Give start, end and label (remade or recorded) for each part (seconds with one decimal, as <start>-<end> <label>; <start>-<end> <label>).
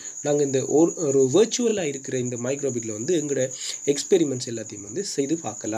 0.0-1.7 recorded; 1.7-5.2 remade; 5.2-5.8 recorded